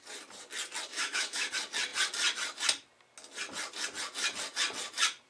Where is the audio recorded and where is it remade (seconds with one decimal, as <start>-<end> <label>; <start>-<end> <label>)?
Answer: 0.0-0.9 recorded; 0.9-1.5 remade; 1.5-5.3 recorded